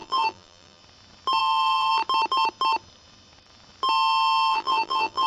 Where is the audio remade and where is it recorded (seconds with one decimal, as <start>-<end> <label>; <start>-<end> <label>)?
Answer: 0.0-0.8 remade; 0.8-1.4 recorded; 1.4-1.9 remade; 1.9-4.5 recorded; 4.5-5.3 remade

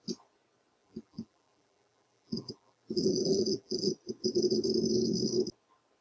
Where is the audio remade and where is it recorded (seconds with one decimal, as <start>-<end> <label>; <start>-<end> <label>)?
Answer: 0.0-0.8 recorded; 0.8-3.9 remade; 3.9-6.0 recorded

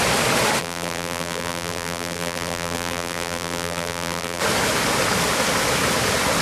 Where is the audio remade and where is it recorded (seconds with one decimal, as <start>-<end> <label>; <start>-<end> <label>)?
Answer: 0.0-0.6 recorded; 0.6-4.4 remade; 4.4-6.4 recorded

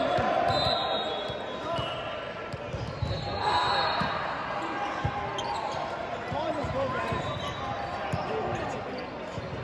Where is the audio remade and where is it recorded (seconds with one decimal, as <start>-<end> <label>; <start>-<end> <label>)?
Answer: 0.0-6.0 recorded; 6.0-8.3 remade; 8.3-9.6 recorded

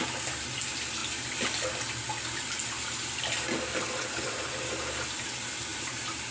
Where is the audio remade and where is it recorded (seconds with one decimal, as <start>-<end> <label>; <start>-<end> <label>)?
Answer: 0.0-5.7 recorded; 5.7-6.3 remade

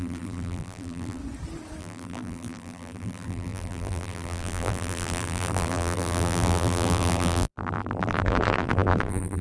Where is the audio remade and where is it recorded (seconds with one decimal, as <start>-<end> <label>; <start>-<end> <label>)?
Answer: 0.0-1.2 remade; 1.2-1.8 recorded; 1.8-9.4 remade

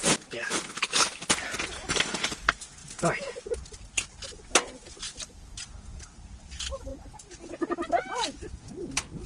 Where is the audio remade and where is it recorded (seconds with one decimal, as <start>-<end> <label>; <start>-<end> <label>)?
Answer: 0.0-2.8 remade; 2.8-4.9 recorded; 4.9-6.9 remade; 6.9-8.1 recorded; 8.1-9.3 remade

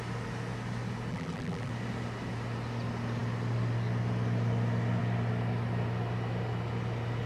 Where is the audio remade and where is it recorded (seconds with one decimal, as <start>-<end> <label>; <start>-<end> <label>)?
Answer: 0.0-1.1 recorded; 1.1-1.7 remade; 1.7-7.3 recorded